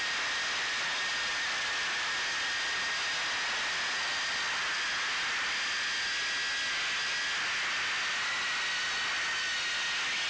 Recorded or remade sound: recorded